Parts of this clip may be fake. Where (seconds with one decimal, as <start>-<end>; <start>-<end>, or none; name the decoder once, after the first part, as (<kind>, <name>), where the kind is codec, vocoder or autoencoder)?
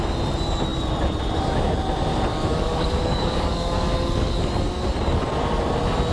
2.3-4.5 (codec, DAC)